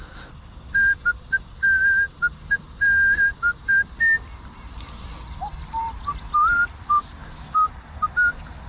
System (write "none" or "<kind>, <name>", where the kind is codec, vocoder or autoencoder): none